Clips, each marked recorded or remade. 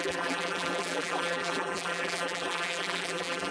remade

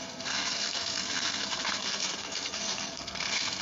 remade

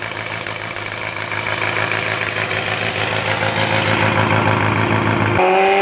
recorded